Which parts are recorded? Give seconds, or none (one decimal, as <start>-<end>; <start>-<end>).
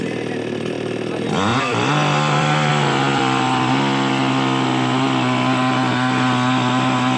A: 0.0-1.5; 2.7-3.1; 3.7-7.2